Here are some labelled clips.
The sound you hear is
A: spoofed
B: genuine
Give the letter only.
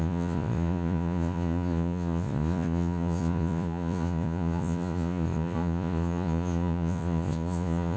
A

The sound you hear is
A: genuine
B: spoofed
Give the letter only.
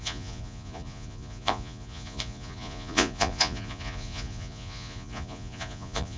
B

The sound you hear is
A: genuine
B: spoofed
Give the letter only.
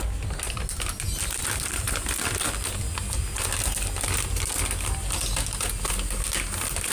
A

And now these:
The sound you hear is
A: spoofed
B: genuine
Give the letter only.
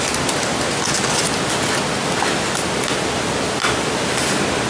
B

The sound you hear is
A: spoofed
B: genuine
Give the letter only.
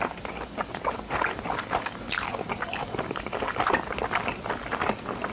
B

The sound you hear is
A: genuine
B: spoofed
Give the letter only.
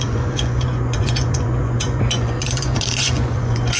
B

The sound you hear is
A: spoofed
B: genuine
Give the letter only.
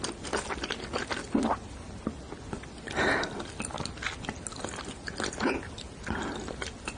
B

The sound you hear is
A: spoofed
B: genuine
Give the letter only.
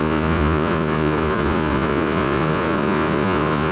A